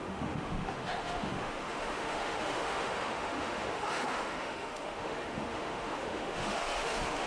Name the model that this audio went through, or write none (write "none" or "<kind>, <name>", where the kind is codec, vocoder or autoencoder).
autoencoder, DAC-VAE